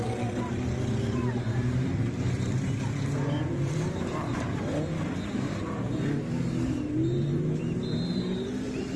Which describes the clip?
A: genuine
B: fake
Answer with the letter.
B